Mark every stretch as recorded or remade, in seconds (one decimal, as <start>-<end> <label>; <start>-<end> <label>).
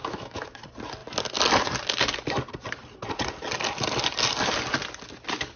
0.0-0.6 remade; 0.6-5.6 recorded